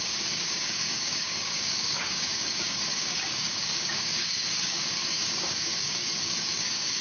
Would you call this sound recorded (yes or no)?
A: no